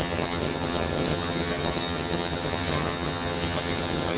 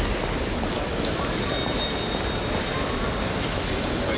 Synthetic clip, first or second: first